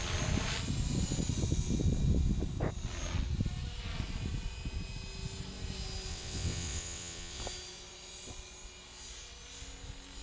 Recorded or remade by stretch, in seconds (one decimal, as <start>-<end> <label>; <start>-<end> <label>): 0.0-6.1 recorded; 6.1-7.4 remade; 7.4-10.2 recorded